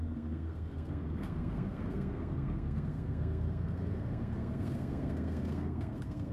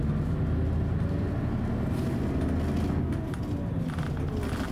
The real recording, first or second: second